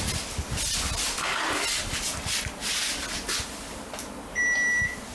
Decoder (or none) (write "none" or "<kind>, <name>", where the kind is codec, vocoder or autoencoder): none